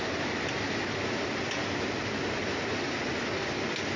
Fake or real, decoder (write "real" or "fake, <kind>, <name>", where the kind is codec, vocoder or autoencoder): real